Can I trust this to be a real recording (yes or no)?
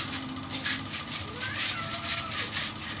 yes